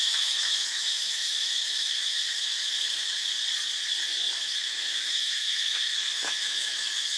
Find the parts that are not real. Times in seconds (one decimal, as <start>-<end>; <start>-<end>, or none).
0.0-3.3; 4.4-7.2